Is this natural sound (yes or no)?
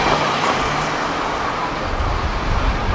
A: yes